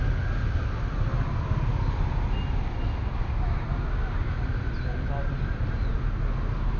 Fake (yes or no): no